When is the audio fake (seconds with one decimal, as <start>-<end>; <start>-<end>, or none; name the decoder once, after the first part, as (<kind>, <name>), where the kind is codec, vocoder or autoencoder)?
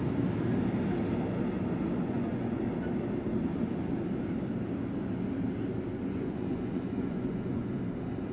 2.0-2.6 (vocoder, Vocos); 5.9-7.8